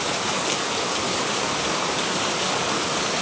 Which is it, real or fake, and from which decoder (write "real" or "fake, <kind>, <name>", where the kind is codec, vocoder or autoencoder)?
fake, codec, DAC